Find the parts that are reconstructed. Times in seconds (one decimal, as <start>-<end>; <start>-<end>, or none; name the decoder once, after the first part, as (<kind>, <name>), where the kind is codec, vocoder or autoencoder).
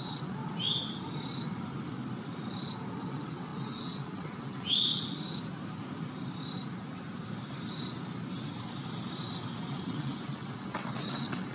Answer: 0.0-0.4 (vocoder, WaveNeXt); 3.0-4.9; 9.7-11.5